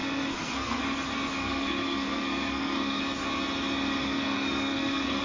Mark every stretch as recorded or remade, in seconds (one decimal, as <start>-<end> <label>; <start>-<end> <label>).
0.0-0.8 remade; 0.8-1.4 recorded; 1.4-3.0 remade; 3.0-4.0 recorded; 4.0-5.2 remade